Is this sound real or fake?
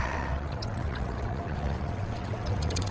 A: fake